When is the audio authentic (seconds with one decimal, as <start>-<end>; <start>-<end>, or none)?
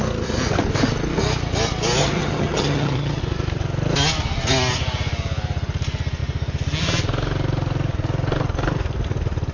0.0-2.0; 3.2-9.5